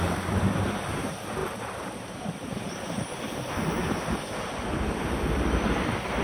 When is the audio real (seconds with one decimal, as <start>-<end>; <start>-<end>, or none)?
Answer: none

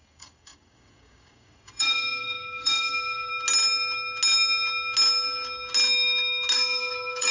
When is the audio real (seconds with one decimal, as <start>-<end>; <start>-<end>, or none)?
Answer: 3.3-6.5